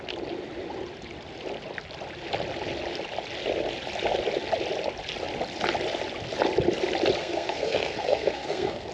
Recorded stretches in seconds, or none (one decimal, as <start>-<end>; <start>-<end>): 0.0-7.2